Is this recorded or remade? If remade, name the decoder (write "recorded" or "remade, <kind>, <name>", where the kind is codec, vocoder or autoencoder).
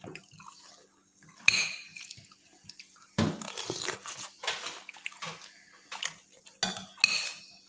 recorded